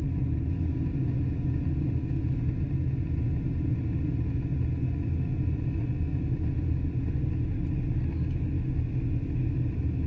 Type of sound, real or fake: real